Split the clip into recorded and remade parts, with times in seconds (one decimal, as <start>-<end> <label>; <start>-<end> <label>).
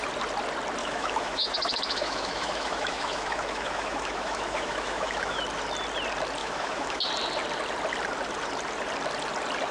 0.0-0.8 recorded; 0.8-5.4 remade; 5.4-6.4 recorded; 6.4-7.1 remade; 7.1-9.7 recorded